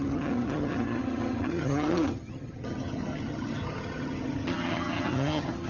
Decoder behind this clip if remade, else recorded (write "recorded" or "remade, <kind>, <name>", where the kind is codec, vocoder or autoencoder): remade, vocoder, HiFi-GAN